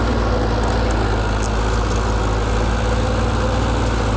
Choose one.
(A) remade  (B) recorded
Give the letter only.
B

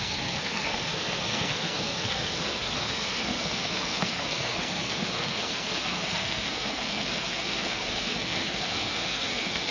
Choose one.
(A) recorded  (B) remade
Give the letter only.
B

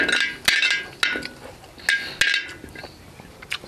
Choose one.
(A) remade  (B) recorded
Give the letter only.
B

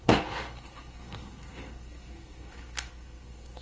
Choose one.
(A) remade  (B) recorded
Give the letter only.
A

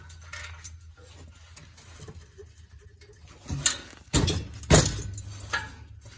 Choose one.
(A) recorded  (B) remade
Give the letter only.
A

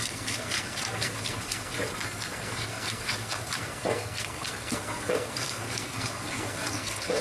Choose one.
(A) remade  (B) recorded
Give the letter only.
A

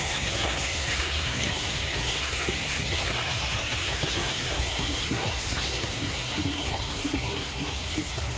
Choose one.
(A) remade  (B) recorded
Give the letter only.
A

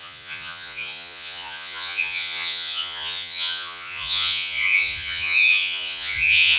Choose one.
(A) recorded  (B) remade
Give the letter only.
B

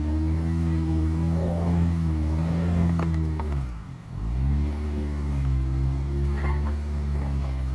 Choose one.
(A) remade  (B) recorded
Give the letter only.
A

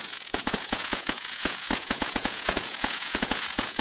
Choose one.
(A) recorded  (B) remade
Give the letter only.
B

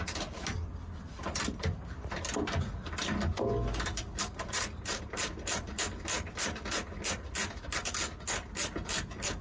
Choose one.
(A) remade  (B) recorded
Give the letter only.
B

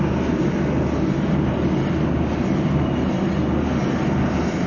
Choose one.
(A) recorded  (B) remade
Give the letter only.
A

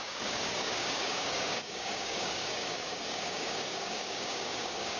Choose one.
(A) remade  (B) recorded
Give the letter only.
A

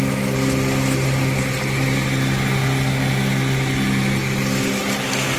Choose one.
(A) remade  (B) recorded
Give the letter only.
B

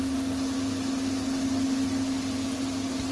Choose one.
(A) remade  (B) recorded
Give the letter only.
B